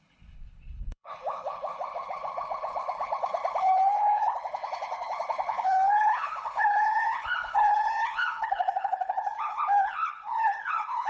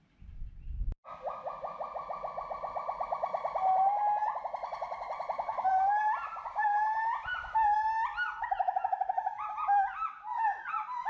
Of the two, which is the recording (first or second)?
second